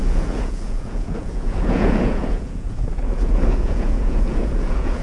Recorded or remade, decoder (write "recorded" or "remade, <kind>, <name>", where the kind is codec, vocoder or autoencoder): remade, vocoder, Vocos